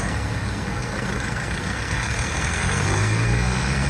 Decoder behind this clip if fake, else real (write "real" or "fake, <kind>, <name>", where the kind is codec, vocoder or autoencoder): fake, codec, SNAC